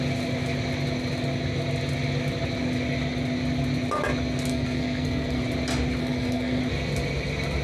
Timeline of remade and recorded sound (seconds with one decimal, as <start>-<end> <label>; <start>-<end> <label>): 0.0-4.5 recorded; 4.5-5.4 remade; 5.4-6.0 recorded; 6.0-6.6 remade; 6.6-7.6 recorded